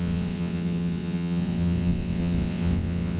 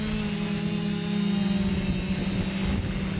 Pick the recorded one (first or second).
second